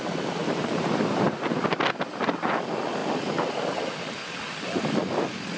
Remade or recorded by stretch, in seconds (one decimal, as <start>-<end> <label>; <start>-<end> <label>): 0.0-0.4 recorded; 0.4-1.8 remade; 1.8-5.6 recorded